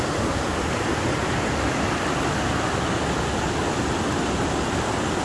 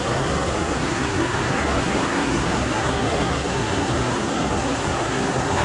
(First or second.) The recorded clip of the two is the first